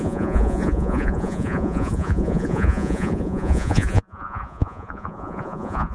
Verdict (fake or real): fake